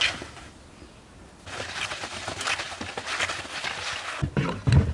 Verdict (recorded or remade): recorded